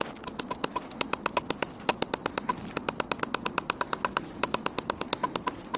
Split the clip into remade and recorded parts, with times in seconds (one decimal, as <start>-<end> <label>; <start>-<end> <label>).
0.0-5.8 recorded